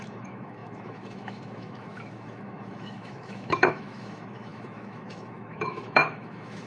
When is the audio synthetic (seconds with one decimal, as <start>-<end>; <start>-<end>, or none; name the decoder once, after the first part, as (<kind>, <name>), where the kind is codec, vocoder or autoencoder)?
0.0-6.7 (autoencoder, DAC-VAE)

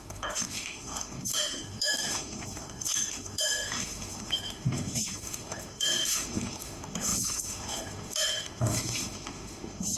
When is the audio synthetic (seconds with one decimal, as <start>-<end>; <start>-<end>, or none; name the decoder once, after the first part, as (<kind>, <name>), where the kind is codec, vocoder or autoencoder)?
0.0-10.0 (autoencoder, DAC-VAE)

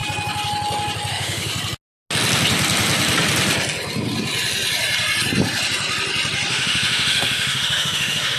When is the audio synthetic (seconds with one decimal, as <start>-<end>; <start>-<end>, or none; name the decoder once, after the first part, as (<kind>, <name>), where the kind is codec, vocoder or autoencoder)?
1.1-1.5 (autoencoder, DAC-VAE); 6.5-8.4